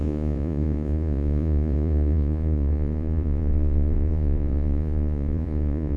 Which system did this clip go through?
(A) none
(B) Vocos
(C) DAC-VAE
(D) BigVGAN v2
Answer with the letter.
B